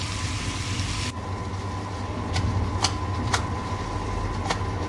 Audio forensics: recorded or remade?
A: recorded